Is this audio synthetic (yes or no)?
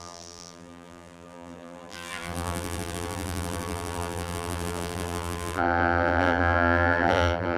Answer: yes